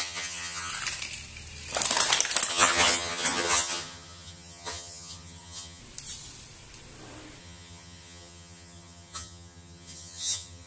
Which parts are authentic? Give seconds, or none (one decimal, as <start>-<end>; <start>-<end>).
0.7-2.5; 5.8-7.4